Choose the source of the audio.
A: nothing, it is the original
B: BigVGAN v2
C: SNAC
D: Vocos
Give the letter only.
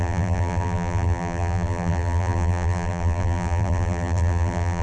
B